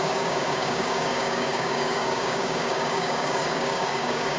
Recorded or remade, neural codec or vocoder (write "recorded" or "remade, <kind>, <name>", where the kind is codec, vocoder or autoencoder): remade, codec, DAC